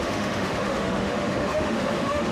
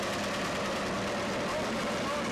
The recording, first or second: second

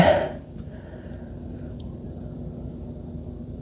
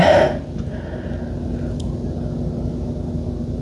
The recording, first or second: second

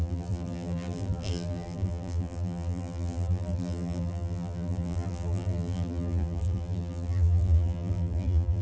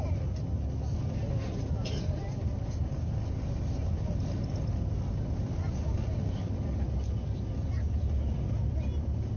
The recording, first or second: second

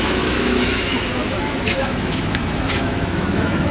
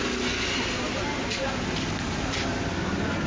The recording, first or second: second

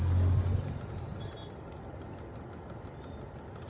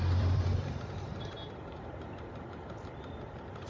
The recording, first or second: first